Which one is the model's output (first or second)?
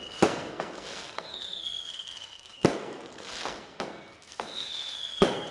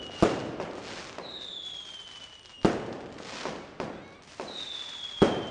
first